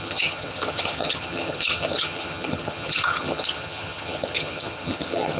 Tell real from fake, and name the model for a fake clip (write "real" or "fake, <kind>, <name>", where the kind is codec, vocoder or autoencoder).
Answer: fake, vocoder, HiFi-GAN